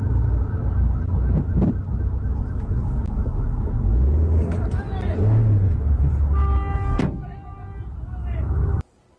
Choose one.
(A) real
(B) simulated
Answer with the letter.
A